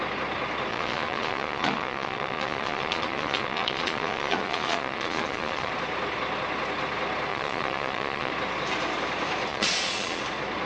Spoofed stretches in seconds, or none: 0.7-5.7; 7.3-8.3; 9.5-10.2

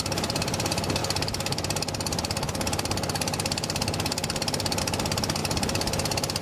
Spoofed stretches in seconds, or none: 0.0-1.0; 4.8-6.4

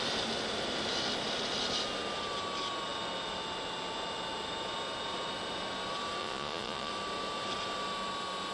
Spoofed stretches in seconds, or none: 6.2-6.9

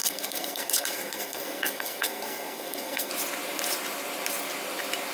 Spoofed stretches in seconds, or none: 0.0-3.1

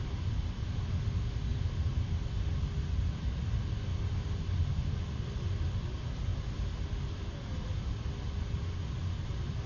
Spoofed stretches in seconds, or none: none

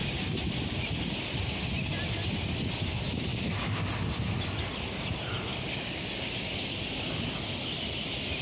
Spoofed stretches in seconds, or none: 3.3-3.9; 5.5-6.3